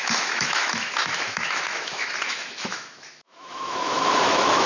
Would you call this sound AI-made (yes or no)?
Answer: yes